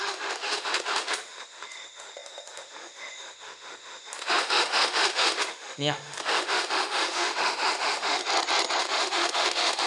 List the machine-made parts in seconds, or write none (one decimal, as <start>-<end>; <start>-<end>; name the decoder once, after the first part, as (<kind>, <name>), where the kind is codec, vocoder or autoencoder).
0.0-8.2 (autoencoder, DAC-VAE); 8.8-9.9